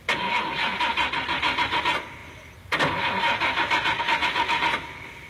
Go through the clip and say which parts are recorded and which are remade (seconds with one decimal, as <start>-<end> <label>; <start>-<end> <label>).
0.0-5.3 recorded